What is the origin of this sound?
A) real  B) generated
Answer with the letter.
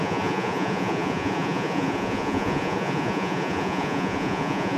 B